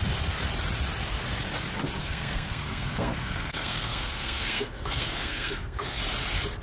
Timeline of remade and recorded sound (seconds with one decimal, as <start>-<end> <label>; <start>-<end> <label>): 0.0-2.0 recorded; 2.0-6.0 remade; 6.0-6.6 recorded